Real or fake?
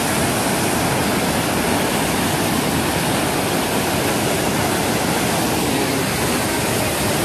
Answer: real